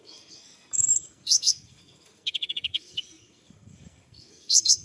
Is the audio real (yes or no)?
no